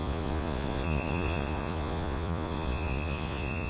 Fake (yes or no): yes